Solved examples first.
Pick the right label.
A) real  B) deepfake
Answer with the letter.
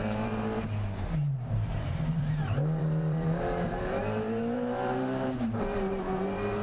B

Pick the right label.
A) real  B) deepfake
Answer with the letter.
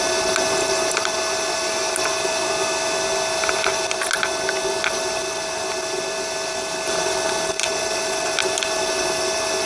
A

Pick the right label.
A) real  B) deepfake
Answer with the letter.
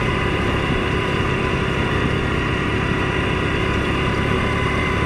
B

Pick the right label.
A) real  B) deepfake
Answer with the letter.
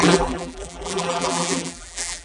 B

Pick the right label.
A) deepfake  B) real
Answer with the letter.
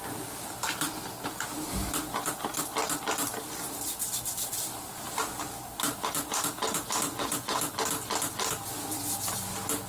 B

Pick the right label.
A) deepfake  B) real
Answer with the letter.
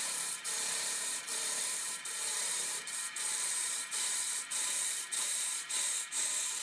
A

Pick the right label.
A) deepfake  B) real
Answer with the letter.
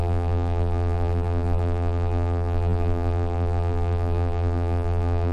A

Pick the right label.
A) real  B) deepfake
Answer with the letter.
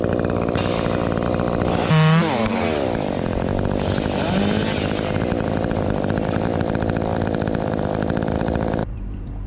B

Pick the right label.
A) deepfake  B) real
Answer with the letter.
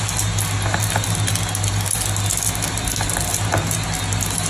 B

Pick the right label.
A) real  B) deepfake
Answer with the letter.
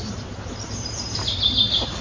B